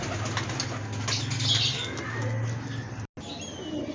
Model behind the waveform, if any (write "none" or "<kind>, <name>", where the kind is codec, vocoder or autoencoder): none